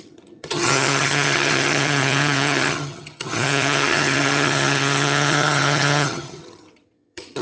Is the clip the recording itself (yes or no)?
no